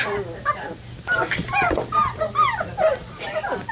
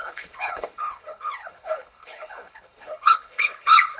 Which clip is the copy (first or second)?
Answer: second